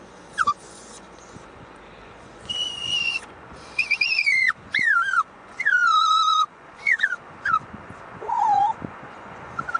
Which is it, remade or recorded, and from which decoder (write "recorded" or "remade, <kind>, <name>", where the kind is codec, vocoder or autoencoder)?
remade, vocoder, Vocos